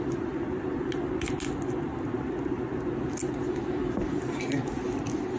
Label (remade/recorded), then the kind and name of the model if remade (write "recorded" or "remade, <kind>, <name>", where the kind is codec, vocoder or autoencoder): recorded